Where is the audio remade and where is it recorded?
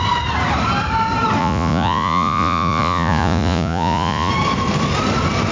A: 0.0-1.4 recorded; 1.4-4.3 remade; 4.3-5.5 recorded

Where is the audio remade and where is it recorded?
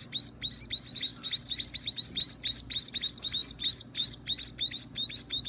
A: 0.0-5.5 recorded